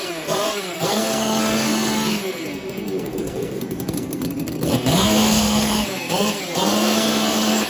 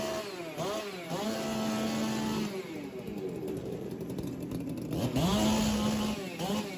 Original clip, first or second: second